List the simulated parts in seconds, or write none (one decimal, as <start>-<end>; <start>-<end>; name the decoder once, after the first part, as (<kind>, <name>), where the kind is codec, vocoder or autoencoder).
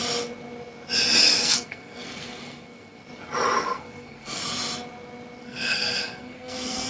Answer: 1.4-3.0 (codec, SNAC); 3.6-4.4; 5.4-6.9